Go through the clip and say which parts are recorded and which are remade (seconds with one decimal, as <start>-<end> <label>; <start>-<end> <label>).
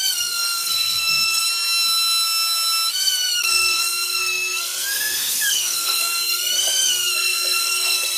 0.0-1.4 remade; 1.4-2.9 recorded; 2.9-8.2 remade